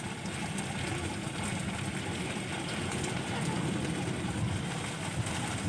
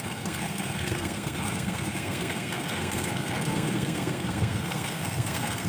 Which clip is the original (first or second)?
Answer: first